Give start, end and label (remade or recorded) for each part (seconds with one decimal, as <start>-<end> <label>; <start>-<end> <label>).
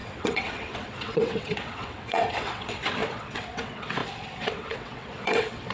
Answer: 0.0-5.7 remade